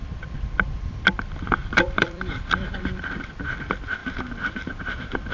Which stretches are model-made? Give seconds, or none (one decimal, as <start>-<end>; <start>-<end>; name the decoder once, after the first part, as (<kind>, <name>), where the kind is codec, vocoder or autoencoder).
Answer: 1.6-3.2 (vocoder, BigVGAN v2)